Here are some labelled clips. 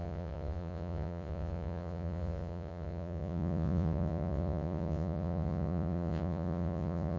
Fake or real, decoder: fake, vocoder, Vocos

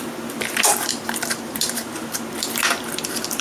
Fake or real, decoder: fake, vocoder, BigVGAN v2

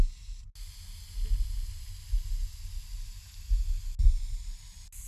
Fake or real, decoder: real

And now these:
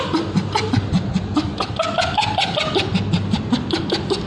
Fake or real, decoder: real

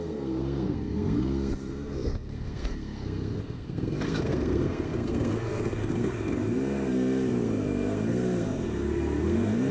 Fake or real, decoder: fake, codec, SNAC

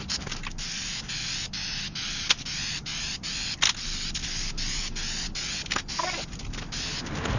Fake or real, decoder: real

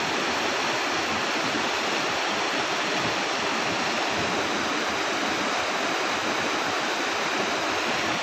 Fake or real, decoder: real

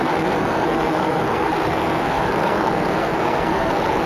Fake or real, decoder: fake, codec, SNAC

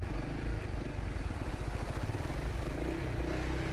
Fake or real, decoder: real